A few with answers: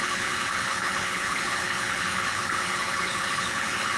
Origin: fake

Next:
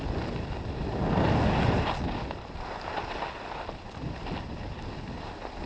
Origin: real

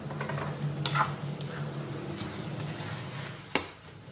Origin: real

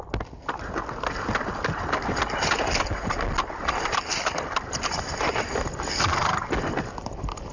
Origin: real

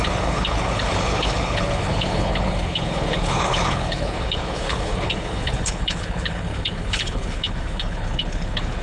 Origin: fake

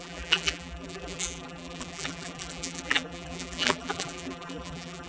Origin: fake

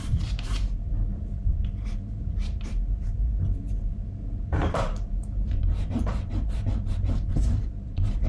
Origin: fake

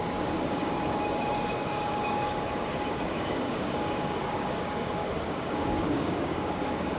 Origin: fake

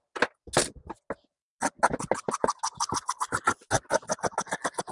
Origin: real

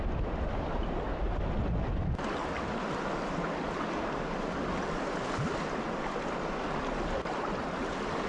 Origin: real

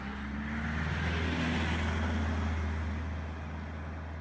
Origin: real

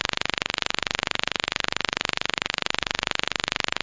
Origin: fake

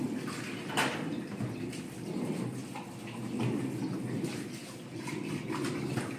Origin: real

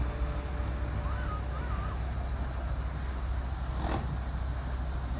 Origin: real